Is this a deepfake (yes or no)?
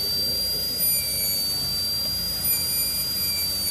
no